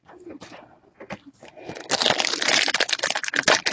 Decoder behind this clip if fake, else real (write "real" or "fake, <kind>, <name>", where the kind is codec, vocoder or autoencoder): real